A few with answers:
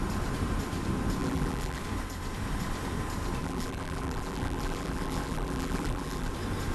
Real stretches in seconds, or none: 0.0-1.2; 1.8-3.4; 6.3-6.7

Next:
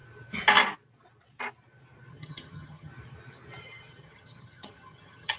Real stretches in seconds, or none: 0.0-2.1; 2.9-3.6

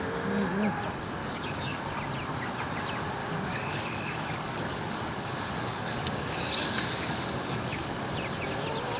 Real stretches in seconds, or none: 0.0-1.2; 1.8-3.2; 8.0-9.0

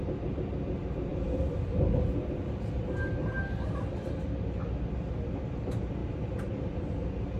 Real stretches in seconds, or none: 0.0-6.0; 6.9-7.4

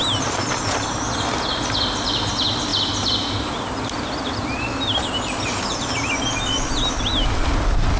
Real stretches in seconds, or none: 0.0-8.0